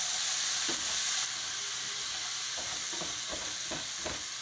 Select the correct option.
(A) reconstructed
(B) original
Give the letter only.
B